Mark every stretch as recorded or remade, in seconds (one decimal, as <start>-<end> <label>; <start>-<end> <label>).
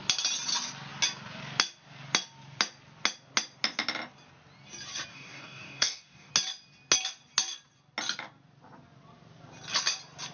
0.0-5.1 recorded; 5.1-6.3 remade; 6.3-10.3 recorded